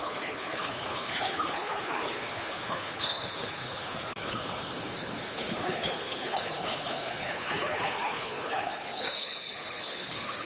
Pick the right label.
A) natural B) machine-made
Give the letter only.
B